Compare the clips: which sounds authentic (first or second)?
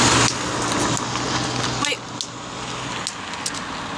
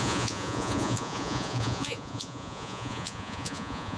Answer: first